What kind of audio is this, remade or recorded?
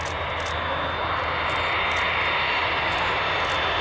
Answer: recorded